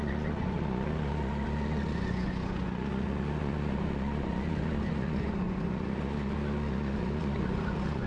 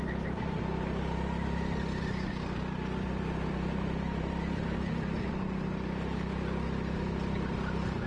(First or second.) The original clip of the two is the second